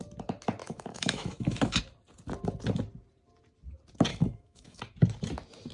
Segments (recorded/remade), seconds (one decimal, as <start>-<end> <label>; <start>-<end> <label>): 0.0-0.6 recorded; 0.6-1.8 remade; 1.8-4.1 recorded; 4.1-4.8 remade; 4.8-5.7 recorded